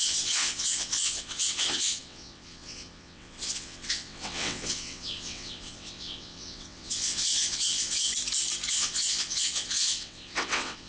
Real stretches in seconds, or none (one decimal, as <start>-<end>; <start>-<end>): 8.1-8.7